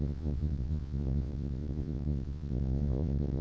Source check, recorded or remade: remade